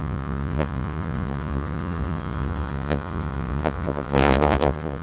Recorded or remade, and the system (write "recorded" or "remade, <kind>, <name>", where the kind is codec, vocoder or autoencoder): remade, vocoder, Vocos